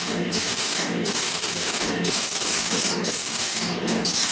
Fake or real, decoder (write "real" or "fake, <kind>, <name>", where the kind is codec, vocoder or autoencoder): fake, codec, DAC